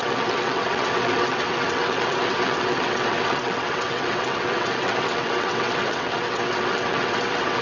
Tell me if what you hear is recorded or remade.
remade